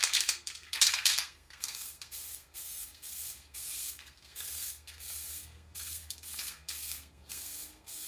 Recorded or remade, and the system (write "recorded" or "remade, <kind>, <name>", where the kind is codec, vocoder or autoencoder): remade, codec, SNAC